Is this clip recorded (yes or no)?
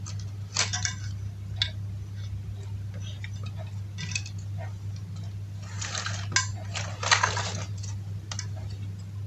yes